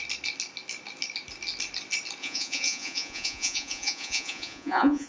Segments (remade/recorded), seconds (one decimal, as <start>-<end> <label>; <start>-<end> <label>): 0.0-2.2 recorded; 2.2-5.1 remade